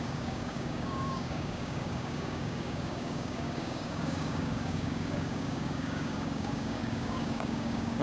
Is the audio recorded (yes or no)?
no